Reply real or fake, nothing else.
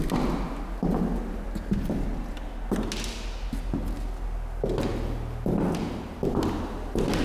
real